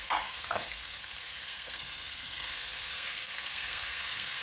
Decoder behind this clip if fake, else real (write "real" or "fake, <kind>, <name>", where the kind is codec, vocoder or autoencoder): fake, codec, SNAC